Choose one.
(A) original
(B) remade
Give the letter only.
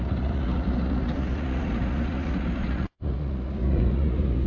B